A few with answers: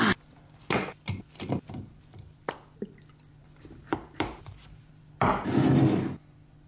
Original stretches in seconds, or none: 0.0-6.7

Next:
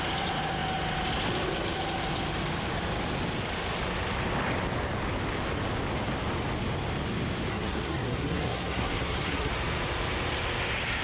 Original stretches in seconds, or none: 0.0-7.5; 9.5-11.0

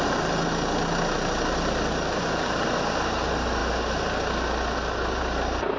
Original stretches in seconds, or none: 0.0-5.8

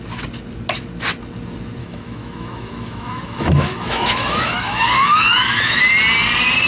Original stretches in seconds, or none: 0.0-1.8; 5.8-6.7

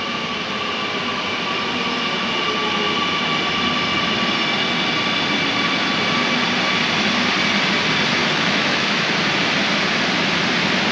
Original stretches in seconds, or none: 0.0-8.2; 9.1-10.9

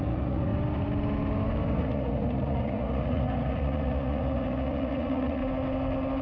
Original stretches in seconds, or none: 0.5-1.7; 5.4-6.2

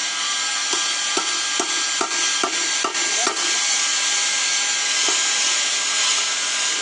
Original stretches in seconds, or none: 0.0-6.8

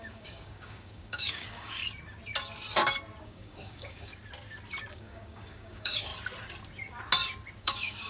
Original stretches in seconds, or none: 1.8-3.2; 4.1-4.9; 6.1-7.6